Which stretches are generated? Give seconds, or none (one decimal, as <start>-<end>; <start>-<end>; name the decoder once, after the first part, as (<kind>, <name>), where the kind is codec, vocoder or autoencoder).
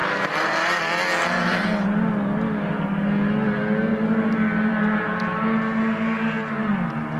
0.0-0.8 (vocoder, BigVGAN v2); 3.9-5.4